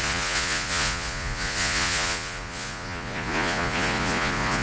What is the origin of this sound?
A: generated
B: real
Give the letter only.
A